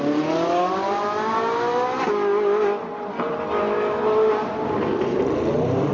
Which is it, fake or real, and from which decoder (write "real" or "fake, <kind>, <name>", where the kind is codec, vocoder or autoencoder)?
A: real